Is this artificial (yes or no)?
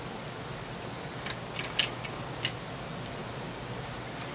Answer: no